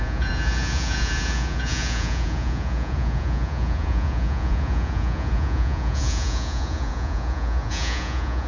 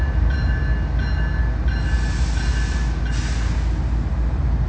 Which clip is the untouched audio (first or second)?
second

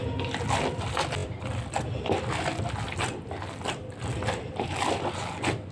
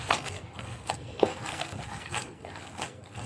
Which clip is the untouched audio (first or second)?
first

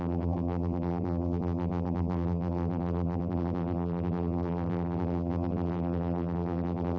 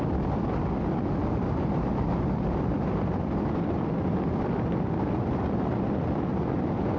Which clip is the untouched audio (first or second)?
second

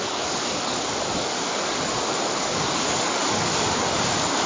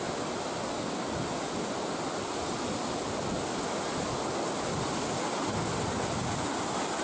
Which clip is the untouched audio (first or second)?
second